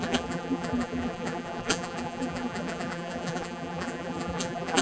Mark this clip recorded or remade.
remade